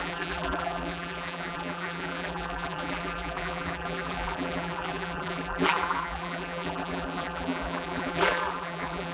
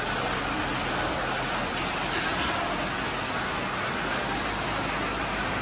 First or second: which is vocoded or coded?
first